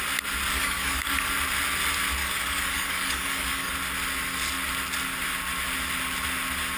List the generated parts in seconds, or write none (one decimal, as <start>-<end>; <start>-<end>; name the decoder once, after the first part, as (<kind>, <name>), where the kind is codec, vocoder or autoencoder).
0.5-1.3 (codec, DAC); 2.2-3.7